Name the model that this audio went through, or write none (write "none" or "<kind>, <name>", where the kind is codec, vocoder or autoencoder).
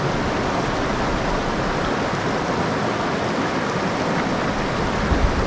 none